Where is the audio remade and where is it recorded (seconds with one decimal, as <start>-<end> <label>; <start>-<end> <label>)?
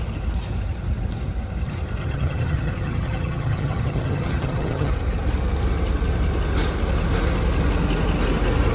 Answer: 0.0-2.0 recorded; 2.0-4.9 remade; 4.9-8.7 recorded